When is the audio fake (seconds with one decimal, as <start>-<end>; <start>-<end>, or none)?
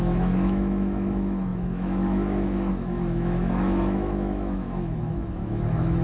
0.0-6.0